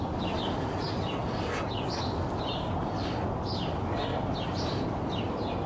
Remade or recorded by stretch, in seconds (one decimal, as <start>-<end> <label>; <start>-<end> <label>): 0.0-4.1 recorded; 4.1-5.0 remade; 5.0-5.7 recorded